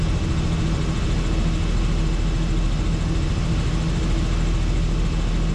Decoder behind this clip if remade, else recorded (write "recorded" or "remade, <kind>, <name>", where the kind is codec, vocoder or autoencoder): recorded